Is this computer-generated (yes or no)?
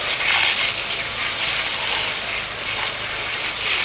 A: no